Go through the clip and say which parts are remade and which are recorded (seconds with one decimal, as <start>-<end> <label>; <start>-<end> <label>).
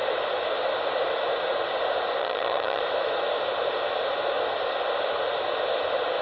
0.0-2.2 recorded; 2.2-2.8 remade; 2.8-6.2 recorded